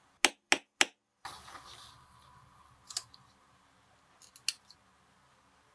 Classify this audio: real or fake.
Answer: real